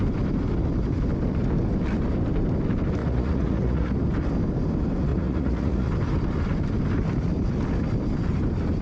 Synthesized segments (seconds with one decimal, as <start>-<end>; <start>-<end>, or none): 3.0-3.9; 5.1-5.9